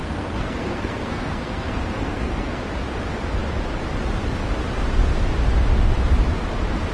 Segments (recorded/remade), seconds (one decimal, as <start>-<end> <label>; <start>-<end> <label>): 0.0-2.6 remade; 2.6-6.9 recorded